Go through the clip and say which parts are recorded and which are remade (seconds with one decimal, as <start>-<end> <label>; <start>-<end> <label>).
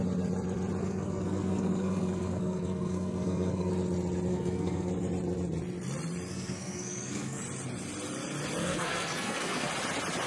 0.0-0.8 recorded; 0.8-3.7 remade; 3.7-4.3 recorded; 4.3-4.9 remade; 4.9-6.3 recorded; 6.3-7.4 remade; 7.4-8.6 recorded; 8.6-9.7 remade; 9.7-10.3 recorded